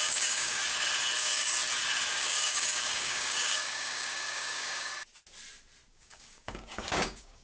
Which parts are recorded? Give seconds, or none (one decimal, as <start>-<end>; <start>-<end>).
0.6-1.2; 1.6-2.1; 4.9-5.9